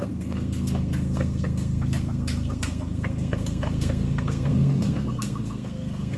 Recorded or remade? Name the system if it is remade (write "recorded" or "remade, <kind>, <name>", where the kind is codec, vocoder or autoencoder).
remade, codec, SNAC